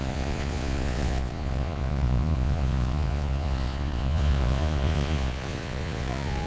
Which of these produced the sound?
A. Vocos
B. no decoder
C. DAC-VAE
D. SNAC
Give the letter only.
A